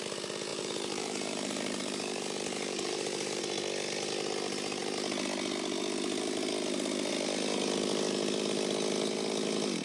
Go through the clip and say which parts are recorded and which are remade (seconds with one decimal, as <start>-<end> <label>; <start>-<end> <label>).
0.0-0.5 recorded; 0.5-3.4 remade; 3.4-9.8 recorded